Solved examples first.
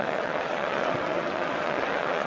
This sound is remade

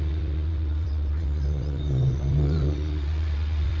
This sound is remade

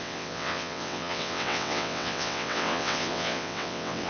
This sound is remade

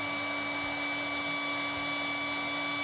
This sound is recorded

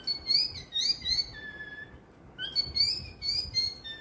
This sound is recorded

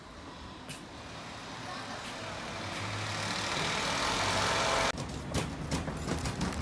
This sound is recorded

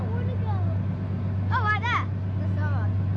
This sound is recorded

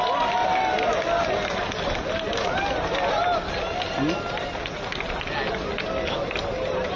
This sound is recorded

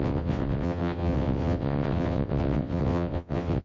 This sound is remade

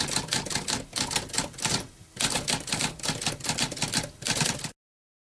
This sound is recorded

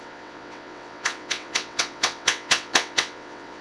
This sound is remade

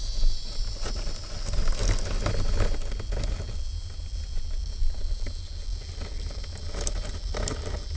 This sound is recorded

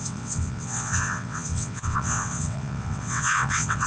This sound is remade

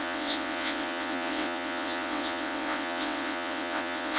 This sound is remade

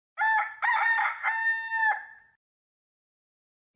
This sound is recorded